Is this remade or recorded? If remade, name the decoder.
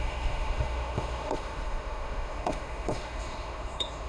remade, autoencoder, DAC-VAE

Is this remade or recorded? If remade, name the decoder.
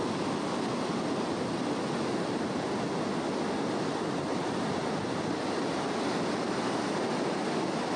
recorded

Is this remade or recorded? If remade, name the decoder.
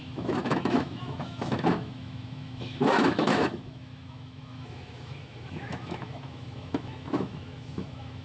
remade, autoencoder, DAC-VAE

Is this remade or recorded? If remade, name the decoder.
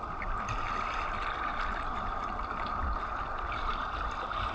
recorded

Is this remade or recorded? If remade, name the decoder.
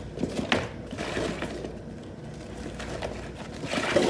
recorded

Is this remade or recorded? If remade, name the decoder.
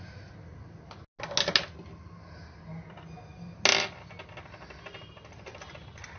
recorded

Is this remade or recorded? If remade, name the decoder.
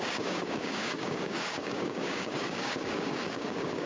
remade, codec, DAC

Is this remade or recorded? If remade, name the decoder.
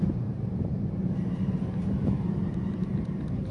remade, vocoder, BigVGAN v2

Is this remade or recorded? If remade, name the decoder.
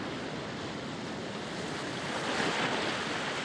recorded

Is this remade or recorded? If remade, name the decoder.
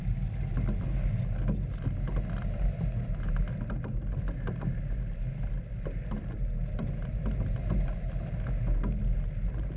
recorded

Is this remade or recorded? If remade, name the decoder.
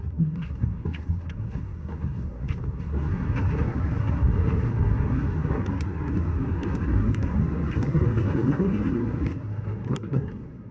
remade, codec, SNAC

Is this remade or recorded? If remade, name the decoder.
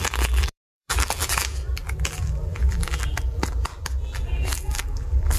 remade, vocoder, BigVGAN v2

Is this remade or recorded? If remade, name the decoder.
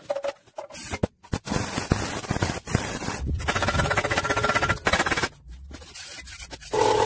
recorded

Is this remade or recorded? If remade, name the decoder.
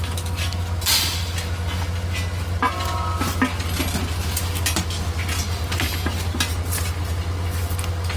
recorded